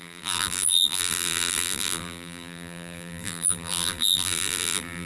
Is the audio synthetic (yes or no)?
yes